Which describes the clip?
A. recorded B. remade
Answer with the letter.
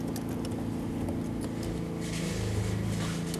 A